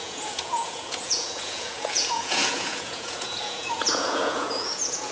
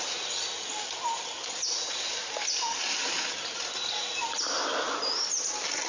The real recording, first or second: second